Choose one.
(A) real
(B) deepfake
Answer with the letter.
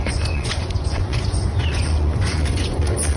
B